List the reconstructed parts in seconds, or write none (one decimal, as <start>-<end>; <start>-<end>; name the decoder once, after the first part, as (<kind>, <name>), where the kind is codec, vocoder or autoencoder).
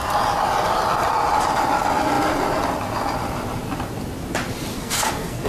4.7-5.5 (codec, SNAC)